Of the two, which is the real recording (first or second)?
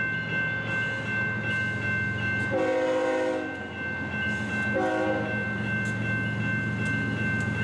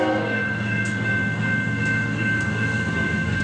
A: first